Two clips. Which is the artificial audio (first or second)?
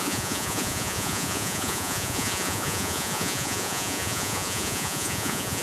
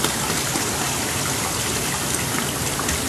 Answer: first